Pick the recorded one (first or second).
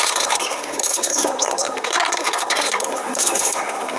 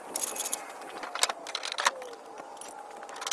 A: second